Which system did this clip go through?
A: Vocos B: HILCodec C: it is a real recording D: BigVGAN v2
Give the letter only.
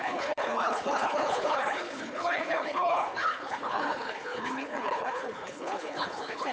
B